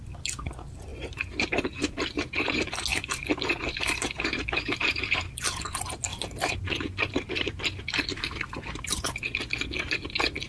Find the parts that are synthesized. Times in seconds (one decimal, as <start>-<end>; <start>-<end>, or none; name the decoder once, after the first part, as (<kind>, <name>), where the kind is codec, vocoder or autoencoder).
0.9-2.2 (vocoder, BigVGAN v2); 2.9-5.3; 6.1-9.2